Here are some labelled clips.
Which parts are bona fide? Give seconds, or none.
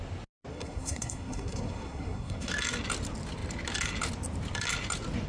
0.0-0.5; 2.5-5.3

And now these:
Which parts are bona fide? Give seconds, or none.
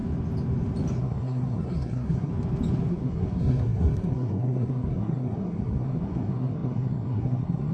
0.0-1.0; 2.3-2.9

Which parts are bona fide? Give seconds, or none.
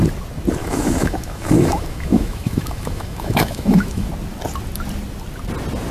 0.0-0.6; 4.1-5.9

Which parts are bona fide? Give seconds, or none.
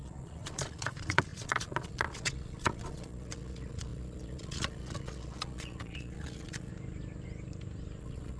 6.7-8.0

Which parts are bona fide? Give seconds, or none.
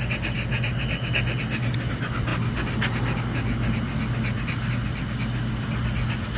0.0-6.4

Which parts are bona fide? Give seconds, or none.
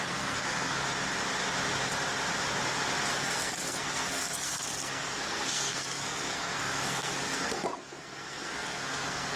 0.8-3.1